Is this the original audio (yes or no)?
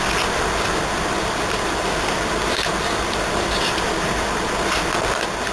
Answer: yes